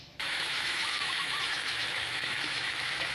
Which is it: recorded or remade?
remade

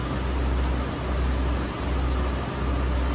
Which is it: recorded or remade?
recorded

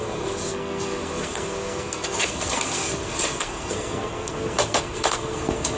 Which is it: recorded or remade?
remade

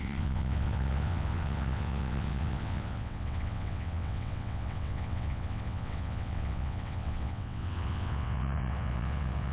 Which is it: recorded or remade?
remade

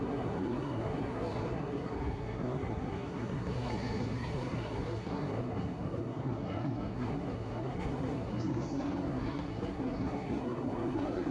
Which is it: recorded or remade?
remade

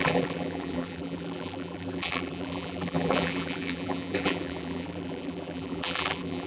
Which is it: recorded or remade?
remade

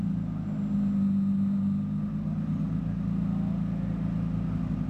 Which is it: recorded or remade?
recorded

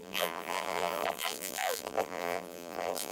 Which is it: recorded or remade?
remade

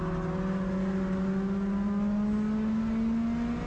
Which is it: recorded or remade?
recorded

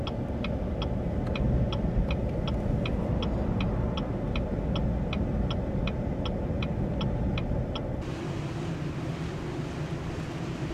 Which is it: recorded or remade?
recorded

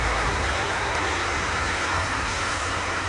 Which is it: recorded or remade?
remade